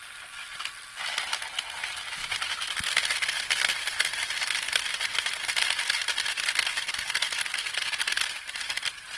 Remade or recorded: recorded